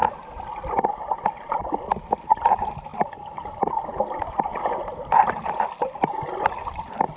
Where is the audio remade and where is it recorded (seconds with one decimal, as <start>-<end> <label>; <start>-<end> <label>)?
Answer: 0.0-1.6 remade; 1.6-2.9 recorded; 2.9-3.7 remade; 3.7-7.2 recorded